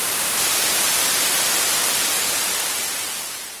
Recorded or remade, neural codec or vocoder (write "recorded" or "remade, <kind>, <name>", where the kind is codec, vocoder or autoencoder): remade, vocoder, BigVGAN v2